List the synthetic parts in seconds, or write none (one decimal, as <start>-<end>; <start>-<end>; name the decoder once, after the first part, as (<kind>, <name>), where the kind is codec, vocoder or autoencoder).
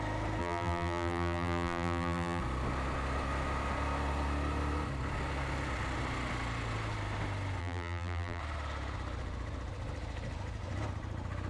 0.4-2.4 (vocoder, BigVGAN v2); 7.6-8.4